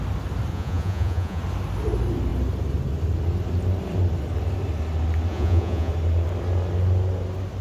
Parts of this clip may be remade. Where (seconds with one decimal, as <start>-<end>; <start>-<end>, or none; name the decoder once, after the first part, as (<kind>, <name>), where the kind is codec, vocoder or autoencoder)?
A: 0.5-1.4 (vocoder, Vocos); 5.3-5.9